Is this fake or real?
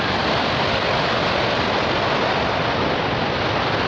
real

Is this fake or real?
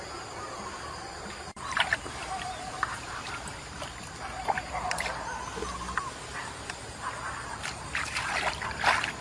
real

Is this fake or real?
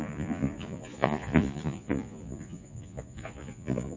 fake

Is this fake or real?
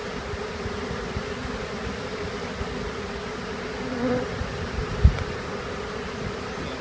real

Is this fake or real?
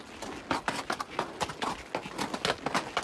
real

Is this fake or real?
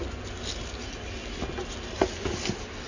real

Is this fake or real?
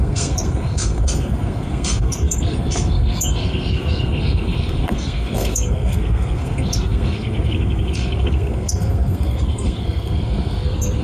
fake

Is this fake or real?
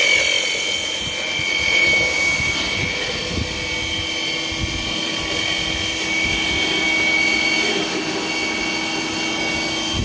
real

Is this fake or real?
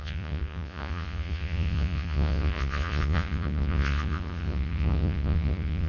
fake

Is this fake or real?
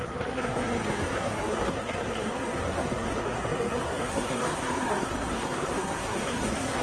fake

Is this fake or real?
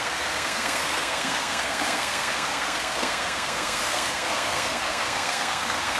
fake